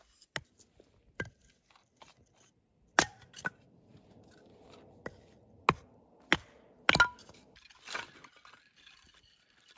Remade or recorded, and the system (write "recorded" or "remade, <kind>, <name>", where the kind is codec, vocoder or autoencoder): recorded